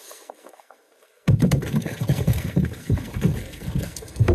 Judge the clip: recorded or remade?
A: remade